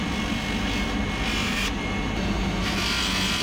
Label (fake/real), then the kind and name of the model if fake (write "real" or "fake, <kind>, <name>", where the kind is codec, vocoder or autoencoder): real